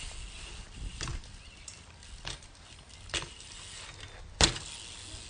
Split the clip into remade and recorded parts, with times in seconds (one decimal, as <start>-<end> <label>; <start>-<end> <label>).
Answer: 0.0-5.3 recorded

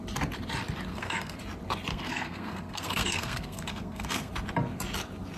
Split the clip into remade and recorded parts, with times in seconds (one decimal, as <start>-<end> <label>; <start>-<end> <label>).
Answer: 0.0-0.9 recorded; 0.9-1.4 remade; 1.4-1.9 recorded; 1.9-4.3 remade; 4.3-5.4 recorded

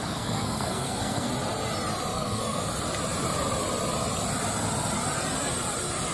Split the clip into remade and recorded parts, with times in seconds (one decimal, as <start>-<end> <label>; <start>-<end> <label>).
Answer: 0.0-1.3 remade; 1.3-2.1 recorded; 2.1-2.6 remade; 2.6-6.1 recorded

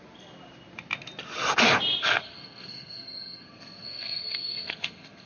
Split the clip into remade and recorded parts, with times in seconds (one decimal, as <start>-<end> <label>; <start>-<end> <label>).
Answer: 0.0-2.0 recorded; 2.0-5.3 remade

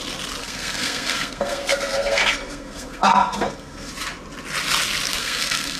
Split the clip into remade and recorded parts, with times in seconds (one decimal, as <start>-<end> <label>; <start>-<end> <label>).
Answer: 0.0-0.4 recorded; 0.4-3.9 remade; 3.9-5.2 recorded; 5.2-5.8 remade

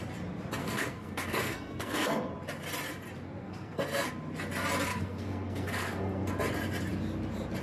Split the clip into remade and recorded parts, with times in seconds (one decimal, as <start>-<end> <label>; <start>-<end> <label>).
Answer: 0.0-0.6 recorded; 0.6-2.3 remade; 2.3-3.4 recorded; 3.4-4.1 remade; 4.1-4.9 recorded; 4.9-6.3 remade; 6.3-7.6 recorded